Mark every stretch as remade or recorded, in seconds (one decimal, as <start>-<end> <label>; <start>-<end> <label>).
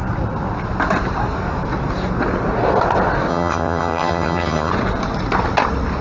0.0-3.3 recorded; 3.3-4.7 remade; 4.7-6.0 recorded